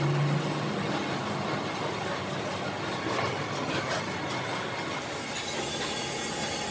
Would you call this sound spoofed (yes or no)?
no